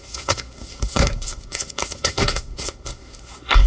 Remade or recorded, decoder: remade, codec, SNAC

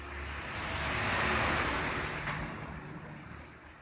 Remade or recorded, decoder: recorded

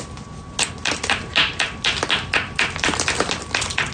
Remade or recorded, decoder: recorded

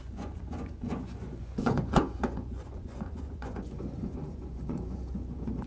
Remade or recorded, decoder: remade, vocoder, Vocos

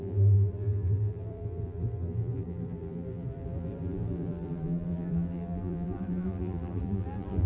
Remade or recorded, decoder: remade, vocoder, BigVGAN v2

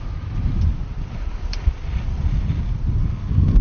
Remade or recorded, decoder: remade, vocoder, BigVGAN v2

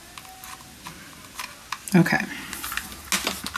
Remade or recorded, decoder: recorded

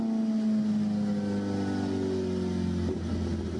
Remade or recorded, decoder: recorded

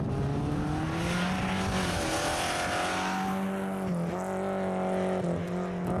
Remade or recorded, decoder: recorded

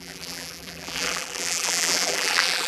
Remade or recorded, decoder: remade, vocoder, BigVGAN v2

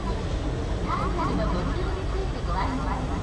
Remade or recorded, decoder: recorded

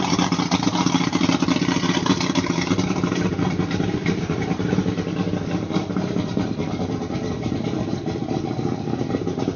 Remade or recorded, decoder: remade, vocoder, BigVGAN v2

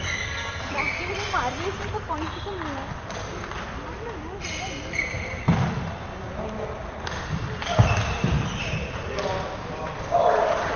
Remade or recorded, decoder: recorded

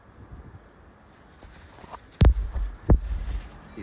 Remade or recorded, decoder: recorded